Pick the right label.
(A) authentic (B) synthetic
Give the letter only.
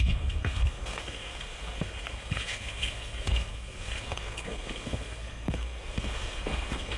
B